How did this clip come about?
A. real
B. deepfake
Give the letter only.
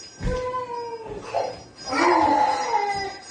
A